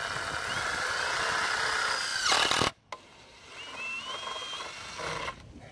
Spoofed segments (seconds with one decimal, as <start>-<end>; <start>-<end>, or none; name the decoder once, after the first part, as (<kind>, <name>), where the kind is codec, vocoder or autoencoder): none